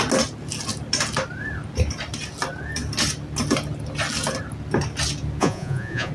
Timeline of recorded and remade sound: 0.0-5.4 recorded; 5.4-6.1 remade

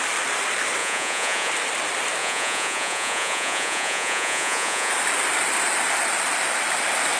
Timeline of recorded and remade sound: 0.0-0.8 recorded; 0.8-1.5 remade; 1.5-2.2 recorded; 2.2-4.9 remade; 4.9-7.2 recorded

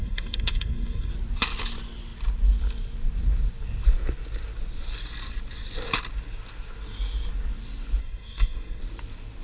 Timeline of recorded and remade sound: 0.0-1.1 remade; 1.1-8.0 recorded; 8.0-8.8 remade; 8.8-9.4 recorded